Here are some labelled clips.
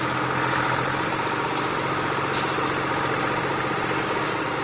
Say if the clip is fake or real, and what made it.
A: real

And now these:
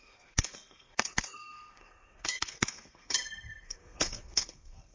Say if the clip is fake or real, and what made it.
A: fake, codec, SNAC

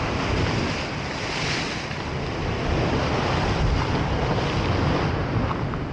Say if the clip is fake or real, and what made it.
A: real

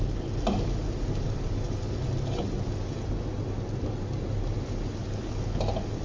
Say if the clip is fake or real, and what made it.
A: real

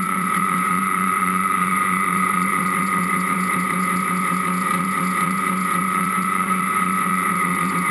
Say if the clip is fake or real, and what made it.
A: fake, vocoder, Vocos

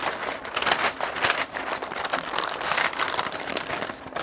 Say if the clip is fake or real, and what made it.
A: real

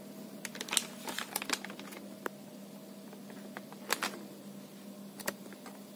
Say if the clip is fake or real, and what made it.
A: real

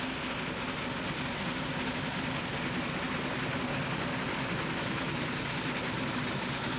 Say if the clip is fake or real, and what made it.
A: real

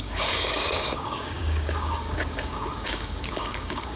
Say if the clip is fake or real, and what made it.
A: fake, codec, DAC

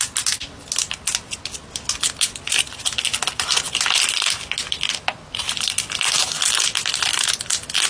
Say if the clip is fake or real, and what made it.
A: real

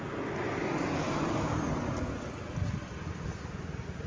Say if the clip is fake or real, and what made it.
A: real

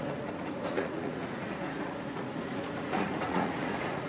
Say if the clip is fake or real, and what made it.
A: fake, vocoder, Vocos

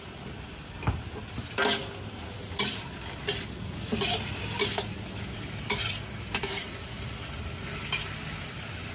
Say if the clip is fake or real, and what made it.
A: real